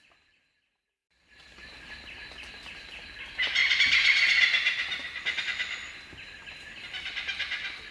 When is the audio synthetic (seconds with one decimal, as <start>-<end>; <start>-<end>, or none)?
none